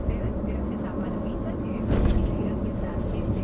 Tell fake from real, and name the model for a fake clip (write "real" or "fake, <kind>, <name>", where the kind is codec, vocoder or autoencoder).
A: real